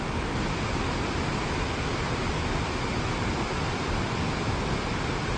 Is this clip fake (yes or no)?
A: no